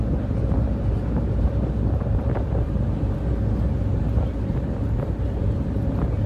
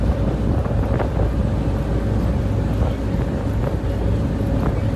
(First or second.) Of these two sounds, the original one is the second